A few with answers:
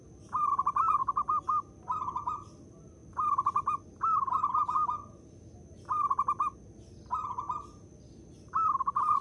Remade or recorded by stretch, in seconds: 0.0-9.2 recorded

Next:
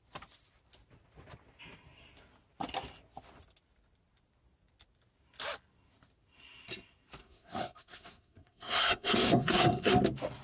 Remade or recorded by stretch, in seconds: 0.0-7.2 recorded; 7.2-9.9 remade; 9.9-10.4 recorded